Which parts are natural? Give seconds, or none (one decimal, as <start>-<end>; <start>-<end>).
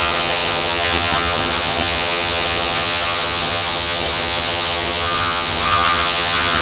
none